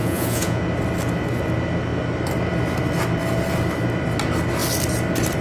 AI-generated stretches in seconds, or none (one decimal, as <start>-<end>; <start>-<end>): 0.0-0.6